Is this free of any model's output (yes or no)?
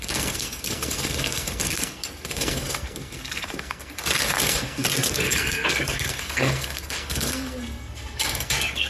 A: no